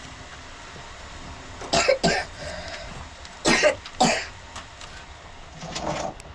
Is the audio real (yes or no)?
yes